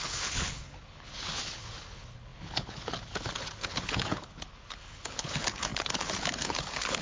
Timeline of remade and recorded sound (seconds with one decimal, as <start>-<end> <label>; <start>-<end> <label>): 0.0-7.0 remade